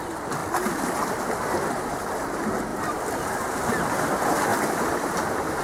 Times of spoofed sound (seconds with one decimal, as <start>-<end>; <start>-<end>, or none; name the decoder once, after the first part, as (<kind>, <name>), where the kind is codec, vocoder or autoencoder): 0.4-1.2 (vocoder, BigVGAN v2); 2.7-4.1; 4.5-5.6